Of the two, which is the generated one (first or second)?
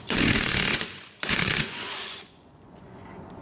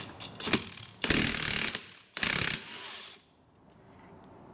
first